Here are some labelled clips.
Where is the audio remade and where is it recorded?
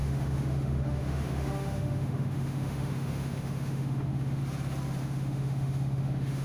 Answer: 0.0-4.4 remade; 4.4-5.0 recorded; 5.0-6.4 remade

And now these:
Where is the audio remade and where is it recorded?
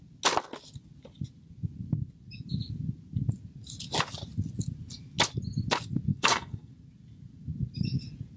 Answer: 0.0-6.1 recorded; 6.1-6.7 remade; 6.7-8.4 recorded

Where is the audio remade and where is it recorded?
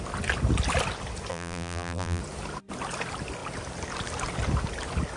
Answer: 0.0-1.3 recorded; 1.3-2.2 remade; 2.2-5.2 recorded